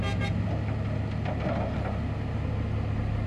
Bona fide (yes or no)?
yes